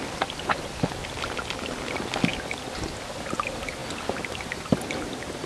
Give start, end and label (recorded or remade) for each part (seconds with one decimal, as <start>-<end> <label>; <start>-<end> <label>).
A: 0.0-5.5 recorded